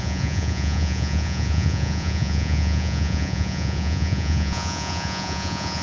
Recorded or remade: remade